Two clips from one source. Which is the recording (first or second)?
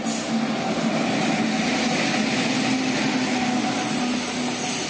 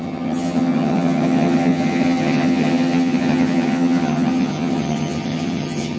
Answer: first